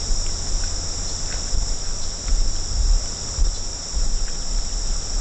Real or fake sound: real